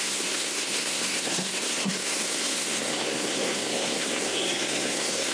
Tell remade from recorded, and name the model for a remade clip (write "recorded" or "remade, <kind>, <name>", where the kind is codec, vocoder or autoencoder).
remade, codec, SNAC